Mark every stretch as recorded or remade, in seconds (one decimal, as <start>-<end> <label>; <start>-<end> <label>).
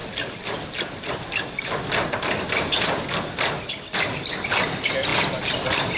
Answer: 0.0-6.0 recorded